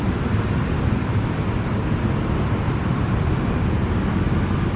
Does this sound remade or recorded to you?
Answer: recorded